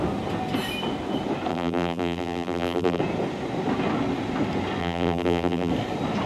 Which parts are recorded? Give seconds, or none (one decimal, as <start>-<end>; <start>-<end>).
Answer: 0.0-1.5; 3.0-4.8; 5.7-6.3